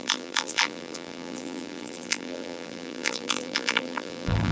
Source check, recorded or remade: remade